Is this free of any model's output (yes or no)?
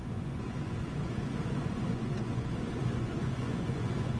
no